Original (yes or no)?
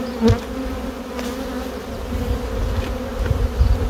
yes